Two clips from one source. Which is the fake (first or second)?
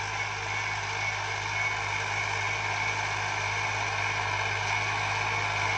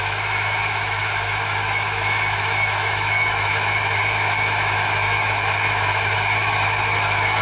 second